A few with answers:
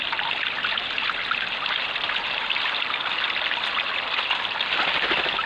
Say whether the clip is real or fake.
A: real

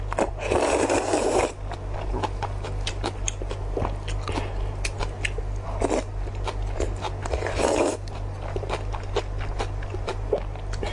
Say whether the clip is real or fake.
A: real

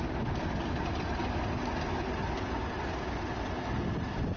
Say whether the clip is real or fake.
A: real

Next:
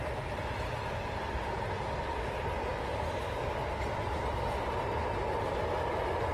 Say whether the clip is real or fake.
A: real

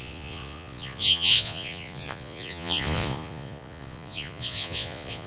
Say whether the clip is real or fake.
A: fake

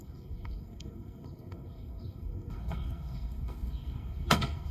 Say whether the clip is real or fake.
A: fake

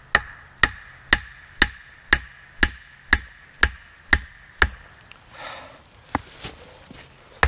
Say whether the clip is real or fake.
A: real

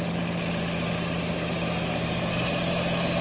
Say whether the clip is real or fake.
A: real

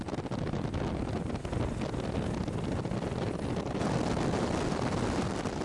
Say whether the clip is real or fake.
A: real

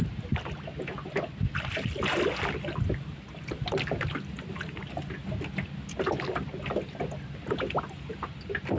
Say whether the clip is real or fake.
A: real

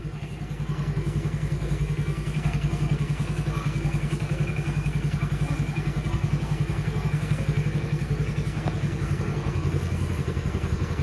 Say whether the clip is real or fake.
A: fake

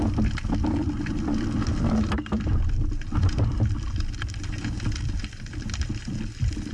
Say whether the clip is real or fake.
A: fake